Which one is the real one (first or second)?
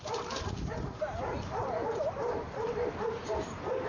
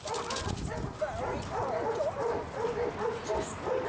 second